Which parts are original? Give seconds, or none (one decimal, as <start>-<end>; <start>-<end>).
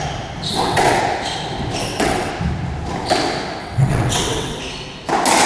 0.0-0.5; 1.0-1.8; 2.3-3.6; 4.6-5.5